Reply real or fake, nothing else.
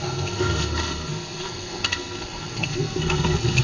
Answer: fake